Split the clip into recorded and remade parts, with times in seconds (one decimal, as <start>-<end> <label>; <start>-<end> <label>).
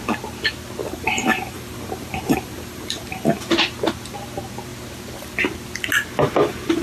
0.0-0.8 recorded; 0.8-3.4 remade; 3.4-6.8 recorded